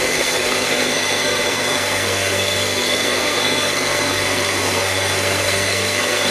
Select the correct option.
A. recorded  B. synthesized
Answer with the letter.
B